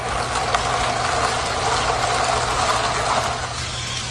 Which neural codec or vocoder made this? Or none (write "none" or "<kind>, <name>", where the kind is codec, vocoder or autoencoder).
none